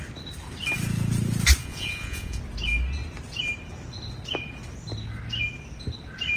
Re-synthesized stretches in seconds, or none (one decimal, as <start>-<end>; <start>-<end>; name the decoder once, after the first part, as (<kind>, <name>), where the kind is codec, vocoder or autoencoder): 1.6-2.4 (vocoder, Vocos)